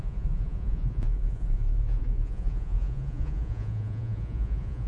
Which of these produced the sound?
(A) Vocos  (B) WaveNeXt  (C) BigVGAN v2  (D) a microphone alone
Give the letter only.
A